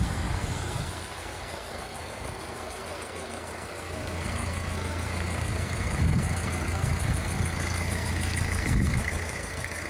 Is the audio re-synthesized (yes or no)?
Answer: yes